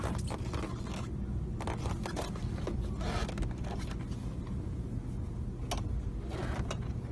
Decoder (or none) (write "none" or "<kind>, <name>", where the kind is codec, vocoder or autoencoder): none